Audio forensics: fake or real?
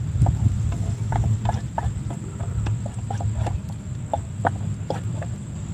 real